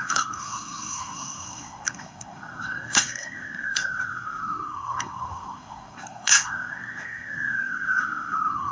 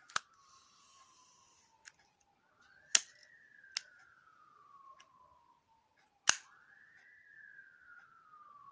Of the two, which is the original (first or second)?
second